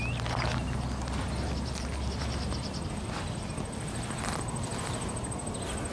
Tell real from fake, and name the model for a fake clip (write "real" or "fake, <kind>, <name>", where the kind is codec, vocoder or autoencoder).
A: real